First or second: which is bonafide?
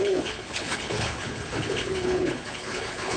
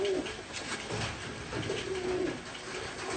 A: second